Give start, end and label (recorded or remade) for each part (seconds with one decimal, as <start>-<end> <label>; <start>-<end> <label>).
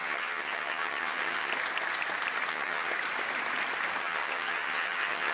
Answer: 0.0-1.5 remade; 1.5-2.5 recorded; 2.5-2.9 remade; 2.9-4.0 recorded; 4.0-5.3 remade